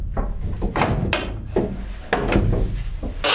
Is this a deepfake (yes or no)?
no